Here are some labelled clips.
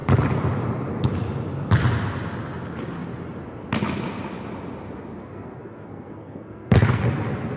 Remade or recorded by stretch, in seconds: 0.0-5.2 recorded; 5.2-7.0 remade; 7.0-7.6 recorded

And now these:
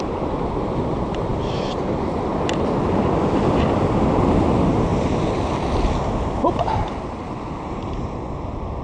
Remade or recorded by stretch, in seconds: 0.0-2.3 remade; 2.3-3.0 recorded; 3.0-4.9 remade; 4.9-6.2 recorded; 6.2-8.8 remade

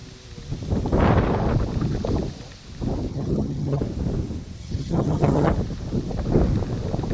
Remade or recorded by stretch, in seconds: 0.0-3.1 recorded; 3.1-3.8 remade; 3.8-4.6 recorded; 4.6-5.5 remade; 5.5-7.1 recorded

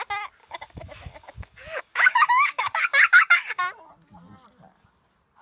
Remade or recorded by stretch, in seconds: 0.0-0.4 recorded; 0.4-3.6 remade; 3.6-5.4 recorded

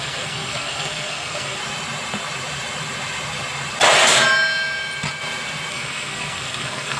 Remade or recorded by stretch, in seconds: 0.0-1.6 remade; 1.6-5.7 recorded; 5.7-7.0 remade

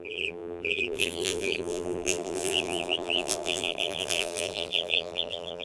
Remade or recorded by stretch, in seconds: 0.0-5.6 remade

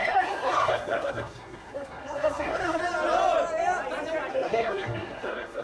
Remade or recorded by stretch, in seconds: 0.0-2.8 remade; 2.8-4.3 recorded; 4.3-5.6 remade

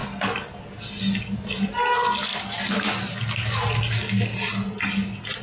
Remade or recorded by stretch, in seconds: 0.0-5.4 recorded